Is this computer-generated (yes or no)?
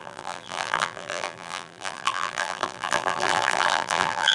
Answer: yes